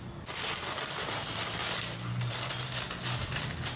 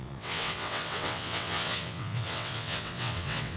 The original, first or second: first